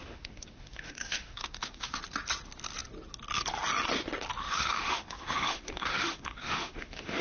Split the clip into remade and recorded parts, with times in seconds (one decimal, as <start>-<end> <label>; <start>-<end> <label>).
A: 0.0-2.0 remade; 2.0-4.4 recorded; 4.4-7.2 remade